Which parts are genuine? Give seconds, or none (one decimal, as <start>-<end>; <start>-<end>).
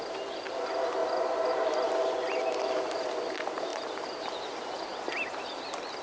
0.0-1.0; 1.5-4.9; 5.5-6.0